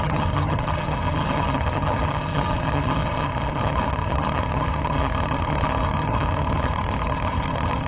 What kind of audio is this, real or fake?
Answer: fake